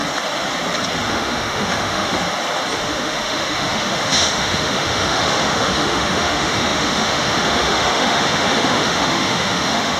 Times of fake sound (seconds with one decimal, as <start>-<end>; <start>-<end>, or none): 1.1-2.1; 2.8-10.0